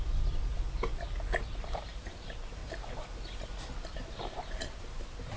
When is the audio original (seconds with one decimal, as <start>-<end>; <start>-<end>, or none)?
0.0-5.4